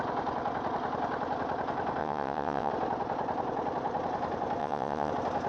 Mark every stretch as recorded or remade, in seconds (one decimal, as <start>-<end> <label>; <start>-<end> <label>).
0.0-2.0 recorded; 2.0-2.7 remade; 2.7-4.6 recorded; 4.6-5.1 remade; 5.1-5.5 recorded